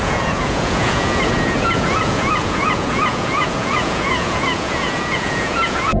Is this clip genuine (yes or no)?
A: no